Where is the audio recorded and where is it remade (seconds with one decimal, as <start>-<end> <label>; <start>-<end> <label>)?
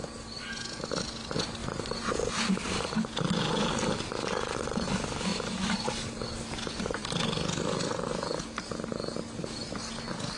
0.0-10.4 recorded